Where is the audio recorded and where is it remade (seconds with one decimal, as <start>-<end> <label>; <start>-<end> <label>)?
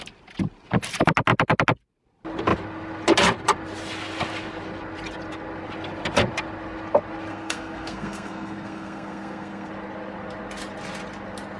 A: 0.0-7.3 recorded; 7.3-9.7 remade; 9.7-11.6 recorded